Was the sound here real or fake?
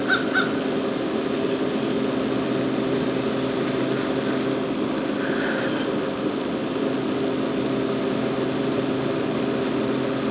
real